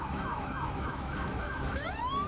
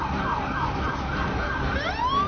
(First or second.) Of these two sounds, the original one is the second